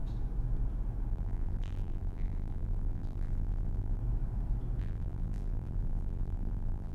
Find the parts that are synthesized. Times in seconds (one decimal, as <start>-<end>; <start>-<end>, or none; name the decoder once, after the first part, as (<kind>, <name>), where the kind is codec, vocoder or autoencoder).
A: 1.1-4.0 (vocoder, BigVGAN v2); 4.8-6.9